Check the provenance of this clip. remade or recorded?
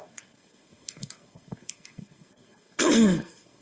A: remade